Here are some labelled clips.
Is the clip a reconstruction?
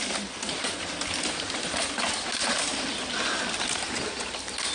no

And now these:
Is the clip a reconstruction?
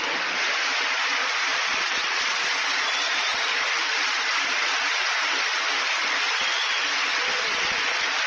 no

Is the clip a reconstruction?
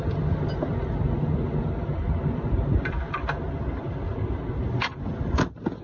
no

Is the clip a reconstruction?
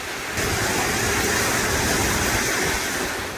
no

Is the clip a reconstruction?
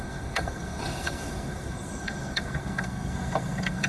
yes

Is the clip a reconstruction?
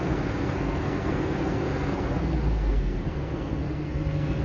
yes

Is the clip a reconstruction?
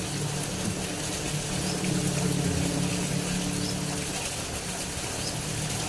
no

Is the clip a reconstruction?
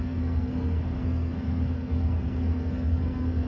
yes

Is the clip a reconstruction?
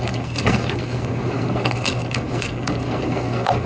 yes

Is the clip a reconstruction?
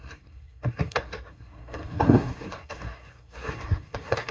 yes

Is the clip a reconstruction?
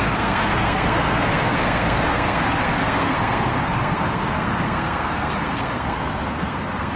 yes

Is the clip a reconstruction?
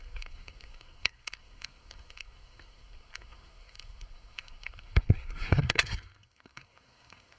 yes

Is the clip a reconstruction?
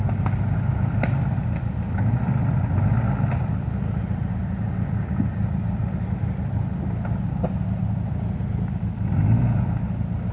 no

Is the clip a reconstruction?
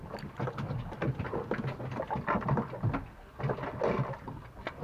no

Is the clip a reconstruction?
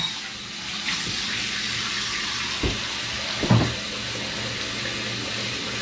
no